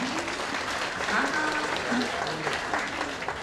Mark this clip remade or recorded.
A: recorded